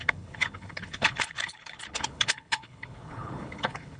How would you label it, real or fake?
fake